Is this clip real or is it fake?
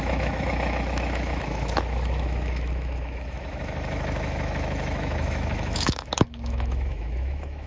fake